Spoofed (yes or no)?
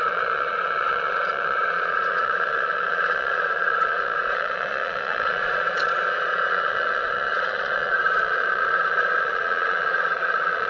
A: yes